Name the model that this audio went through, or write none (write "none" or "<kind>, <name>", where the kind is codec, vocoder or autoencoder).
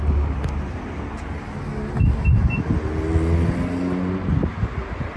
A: none